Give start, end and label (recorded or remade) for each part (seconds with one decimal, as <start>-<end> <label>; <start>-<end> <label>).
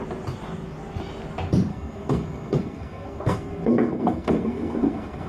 0.0-1.7 recorded; 1.7-5.3 remade